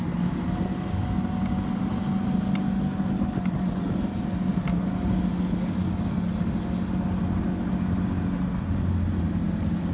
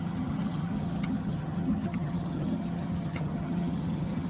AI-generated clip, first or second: second